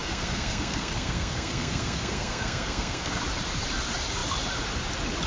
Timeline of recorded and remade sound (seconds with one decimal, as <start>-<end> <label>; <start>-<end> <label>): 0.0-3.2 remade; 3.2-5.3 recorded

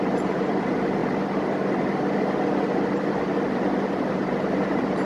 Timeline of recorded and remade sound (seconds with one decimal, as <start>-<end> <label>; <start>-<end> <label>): 0.0-1.0 remade; 1.0-4.1 recorded; 4.1-5.1 remade

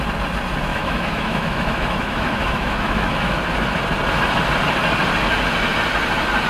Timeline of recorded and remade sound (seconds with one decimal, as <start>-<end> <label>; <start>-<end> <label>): 0.0-0.7 recorded; 0.7-3.4 remade; 3.4-6.5 recorded

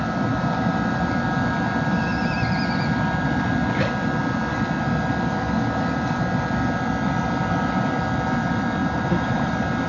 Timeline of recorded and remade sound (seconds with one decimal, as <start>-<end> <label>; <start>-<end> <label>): 0.0-8.8 recorded; 8.8-9.5 remade; 9.5-9.9 recorded

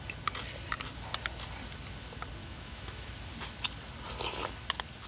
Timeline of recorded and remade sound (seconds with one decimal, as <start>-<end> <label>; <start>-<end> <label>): 0.0-2.4 recorded; 2.4-3.1 remade; 3.1-5.1 recorded

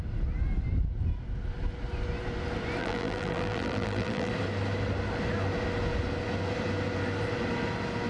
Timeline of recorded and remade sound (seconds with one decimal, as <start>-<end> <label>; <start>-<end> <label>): 0.0-2.8 recorded; 2.8-4.3 remade; 4.3-8.1 recorded